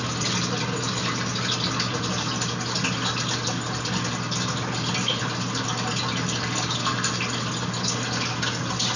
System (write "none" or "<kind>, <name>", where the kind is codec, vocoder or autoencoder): none